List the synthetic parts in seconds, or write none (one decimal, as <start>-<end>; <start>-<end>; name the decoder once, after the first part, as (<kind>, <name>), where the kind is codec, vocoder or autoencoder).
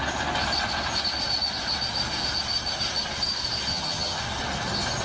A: 3.7-4.2 (vocoder, HiFi-GAN)